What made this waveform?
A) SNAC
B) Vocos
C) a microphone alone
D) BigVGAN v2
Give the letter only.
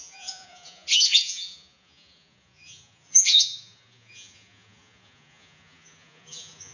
B